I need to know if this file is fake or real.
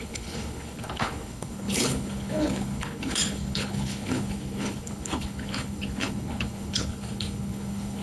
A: fake